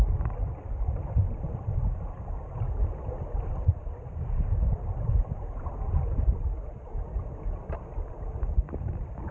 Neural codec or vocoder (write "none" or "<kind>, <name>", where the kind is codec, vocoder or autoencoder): none